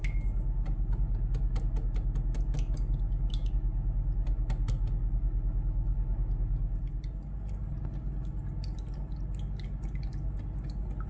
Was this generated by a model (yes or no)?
no